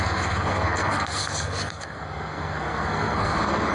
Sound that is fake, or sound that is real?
fake